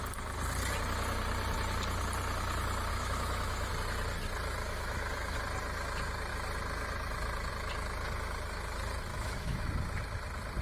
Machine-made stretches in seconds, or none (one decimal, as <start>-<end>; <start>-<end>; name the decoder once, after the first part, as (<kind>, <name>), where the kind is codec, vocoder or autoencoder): 2.9-3.7 (autoencoder, DAC-VAE); 4.6-5.4; 9.1-9.7